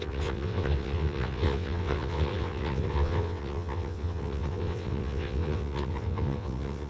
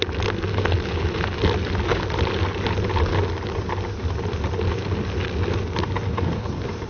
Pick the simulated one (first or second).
first